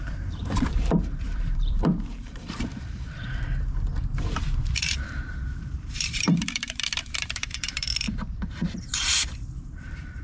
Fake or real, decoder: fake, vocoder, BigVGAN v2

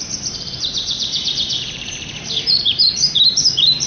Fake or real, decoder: fake, vocoder, BigVGAN v2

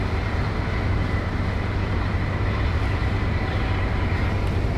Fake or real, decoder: fake, vocoder, BigVGAN v2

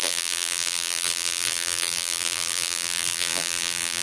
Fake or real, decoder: fake, vocoder, BigVGAN v2